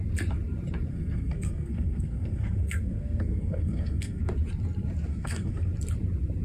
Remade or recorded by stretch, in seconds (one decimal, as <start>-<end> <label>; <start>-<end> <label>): 0.0-0.9 recorded; 0.9-4.2 remade; 4.2-5.1 recorded; 5.1-5.7 remade; 5.7-6.4 recorded